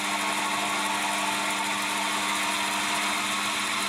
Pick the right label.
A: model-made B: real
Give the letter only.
B